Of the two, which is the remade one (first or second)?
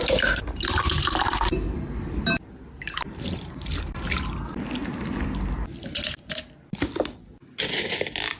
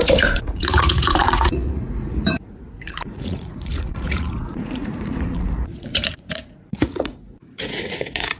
second